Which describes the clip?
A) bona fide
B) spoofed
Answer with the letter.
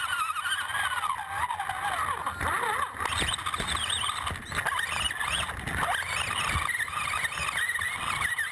A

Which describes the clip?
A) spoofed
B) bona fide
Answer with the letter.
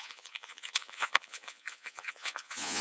A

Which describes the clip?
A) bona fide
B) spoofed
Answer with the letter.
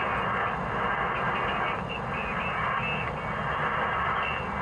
A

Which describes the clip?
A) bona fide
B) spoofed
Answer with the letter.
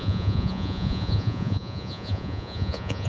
B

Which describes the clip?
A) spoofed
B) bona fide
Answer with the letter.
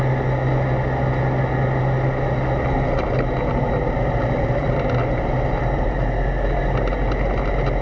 B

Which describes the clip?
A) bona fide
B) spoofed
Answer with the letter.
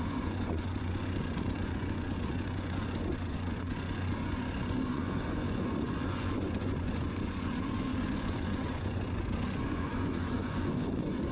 B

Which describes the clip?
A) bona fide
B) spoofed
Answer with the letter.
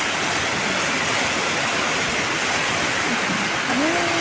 A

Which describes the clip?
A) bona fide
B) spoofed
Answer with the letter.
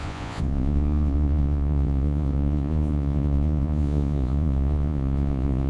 B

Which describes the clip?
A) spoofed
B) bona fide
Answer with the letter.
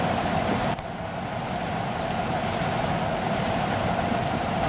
B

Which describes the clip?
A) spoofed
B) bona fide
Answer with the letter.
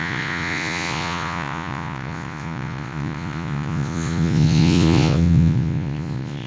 A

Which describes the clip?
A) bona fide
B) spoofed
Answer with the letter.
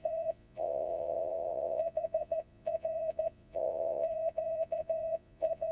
B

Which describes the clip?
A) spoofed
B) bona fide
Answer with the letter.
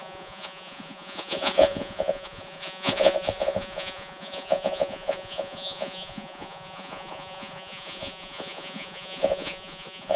A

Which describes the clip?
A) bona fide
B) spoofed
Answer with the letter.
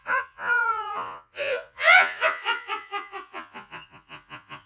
B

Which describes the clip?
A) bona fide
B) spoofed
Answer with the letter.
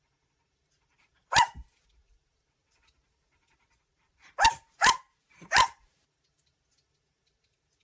A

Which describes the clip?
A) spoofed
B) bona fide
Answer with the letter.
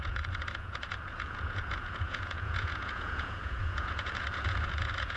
A